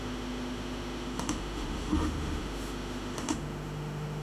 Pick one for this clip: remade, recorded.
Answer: remade